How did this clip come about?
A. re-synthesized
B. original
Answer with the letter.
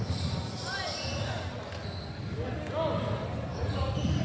B